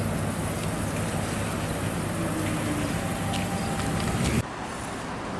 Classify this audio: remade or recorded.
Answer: recorded